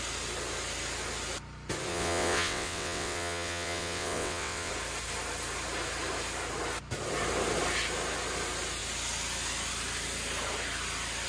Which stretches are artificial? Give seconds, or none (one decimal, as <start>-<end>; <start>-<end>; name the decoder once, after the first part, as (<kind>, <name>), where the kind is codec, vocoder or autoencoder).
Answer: 1.9-4.7 (vocoder, WaveNeXt)